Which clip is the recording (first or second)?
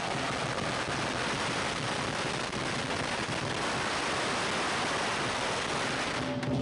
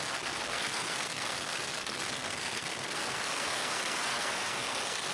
first